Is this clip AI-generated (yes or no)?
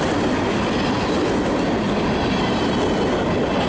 no